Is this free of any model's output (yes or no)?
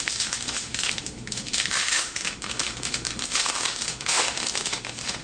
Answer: no